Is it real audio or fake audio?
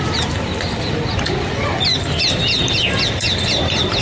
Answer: real